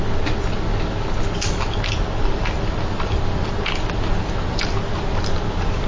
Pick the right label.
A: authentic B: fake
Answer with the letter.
A